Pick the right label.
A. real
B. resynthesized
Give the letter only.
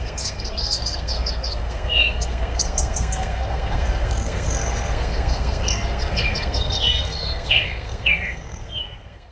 B